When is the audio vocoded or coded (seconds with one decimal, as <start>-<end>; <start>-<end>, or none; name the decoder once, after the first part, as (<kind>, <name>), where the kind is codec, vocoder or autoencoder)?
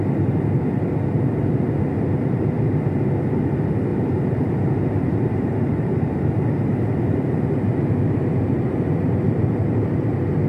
3.9-6.2 (vocoder, BigVGAN v2); 6.7-10.1